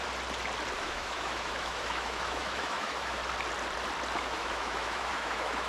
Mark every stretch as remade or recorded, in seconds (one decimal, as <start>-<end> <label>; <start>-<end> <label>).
0.0-0.8 recorded; 0.8-3.2 remade; 3.2-4.2 recorded; 4.2-5.7 remade